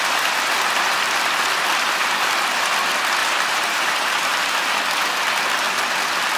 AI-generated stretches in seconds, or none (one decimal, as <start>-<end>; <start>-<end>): 3.2-4.3